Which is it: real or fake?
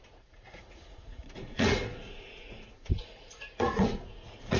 fake